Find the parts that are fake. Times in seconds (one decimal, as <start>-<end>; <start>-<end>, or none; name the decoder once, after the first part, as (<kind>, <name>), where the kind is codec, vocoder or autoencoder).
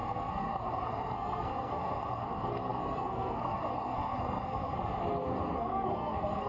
0.0-6.5 (codec, SNAC)